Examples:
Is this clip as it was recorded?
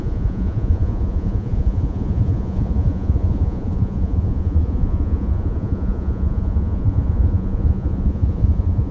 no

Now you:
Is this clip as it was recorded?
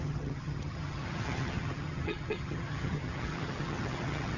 no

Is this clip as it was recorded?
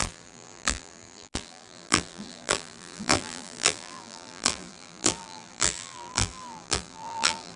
no